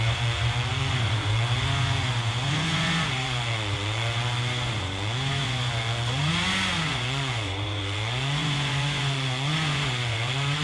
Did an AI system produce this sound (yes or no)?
yes